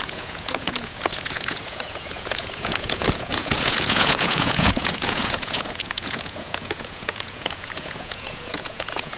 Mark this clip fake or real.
fake